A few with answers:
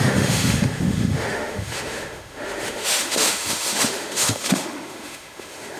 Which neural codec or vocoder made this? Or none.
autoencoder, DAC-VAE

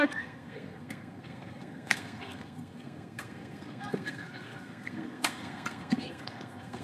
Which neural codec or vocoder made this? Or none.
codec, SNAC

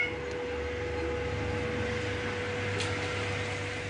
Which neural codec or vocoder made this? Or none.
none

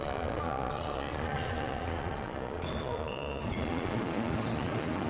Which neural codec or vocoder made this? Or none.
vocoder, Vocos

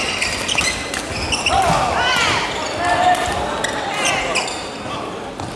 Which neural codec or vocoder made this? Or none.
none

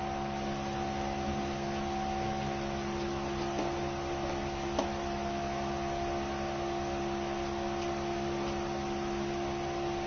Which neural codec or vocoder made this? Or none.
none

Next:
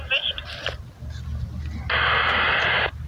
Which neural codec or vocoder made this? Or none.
none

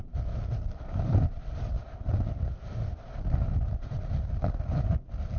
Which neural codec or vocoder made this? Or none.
none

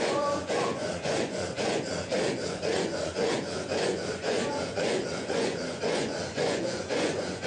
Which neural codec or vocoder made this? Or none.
vocoder, Vocos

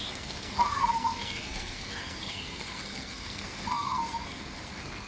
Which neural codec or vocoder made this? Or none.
codec, SNAC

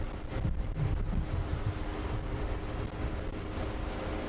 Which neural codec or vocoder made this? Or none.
none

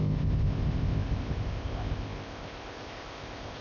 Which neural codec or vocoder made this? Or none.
codec, ZipCodec